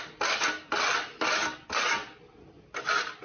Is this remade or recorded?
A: recorded